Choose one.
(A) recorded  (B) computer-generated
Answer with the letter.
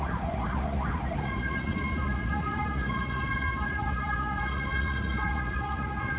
B